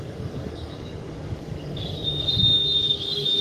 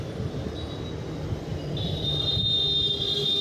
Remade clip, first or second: first